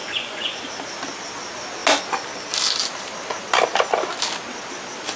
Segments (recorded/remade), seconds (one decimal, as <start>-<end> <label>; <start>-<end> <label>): 0.0-0.6 remade; 0.6-5.2 recorded